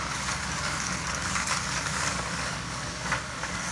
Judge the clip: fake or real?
fake